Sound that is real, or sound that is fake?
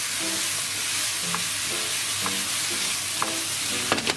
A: real